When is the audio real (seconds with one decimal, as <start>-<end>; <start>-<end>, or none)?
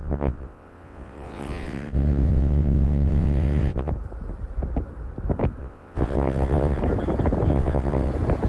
3.9-5.6; 6.8-7.5; 8.1-8.5